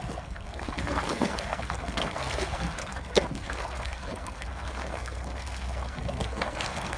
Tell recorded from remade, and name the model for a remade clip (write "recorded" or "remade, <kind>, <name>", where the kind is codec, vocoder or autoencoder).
remade, codec, SNAC